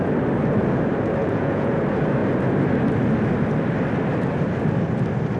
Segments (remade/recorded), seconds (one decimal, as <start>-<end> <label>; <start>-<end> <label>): 0.0-1.2 recorded; 1.2-1.7 remade; 1.7-5.4 recorded